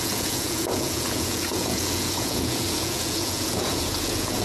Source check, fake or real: fake